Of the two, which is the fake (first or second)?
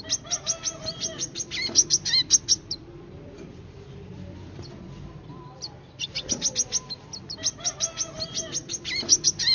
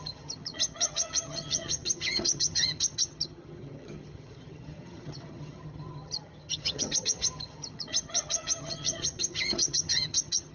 second